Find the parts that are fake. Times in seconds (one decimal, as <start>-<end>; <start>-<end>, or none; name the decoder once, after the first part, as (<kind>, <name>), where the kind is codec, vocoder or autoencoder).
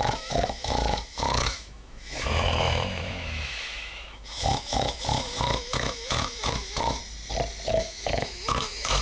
0.0-7.0 (autoencoder, DAC-VAE); 7.7-9.0